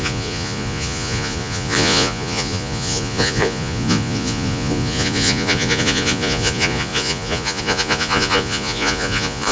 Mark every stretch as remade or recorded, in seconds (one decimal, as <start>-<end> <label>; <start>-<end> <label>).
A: 0.0-9.5 remade